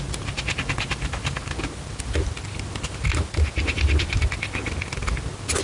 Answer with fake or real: real